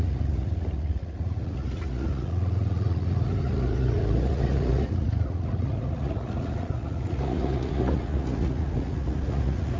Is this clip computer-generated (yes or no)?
yes